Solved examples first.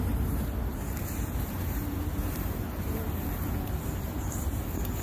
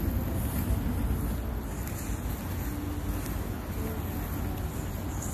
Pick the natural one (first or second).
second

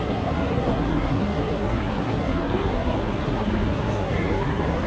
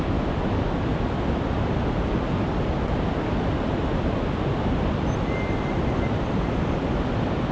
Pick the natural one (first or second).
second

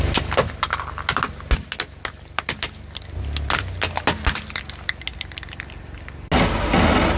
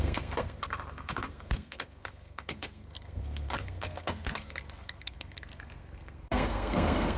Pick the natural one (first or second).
first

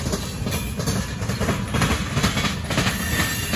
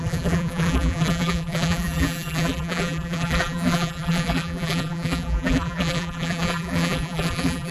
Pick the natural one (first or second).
first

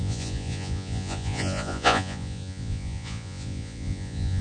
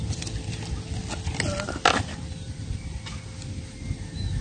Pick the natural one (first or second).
second